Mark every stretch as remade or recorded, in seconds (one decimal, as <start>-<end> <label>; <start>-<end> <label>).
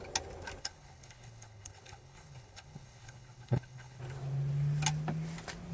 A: 0.0-0.6 recorded; 0.6-4.0 remade; 4.0-5.7 recorded